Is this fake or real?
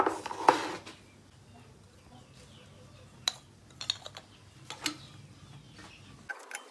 real